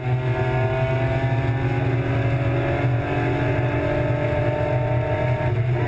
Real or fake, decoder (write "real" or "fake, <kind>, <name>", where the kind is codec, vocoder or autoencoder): real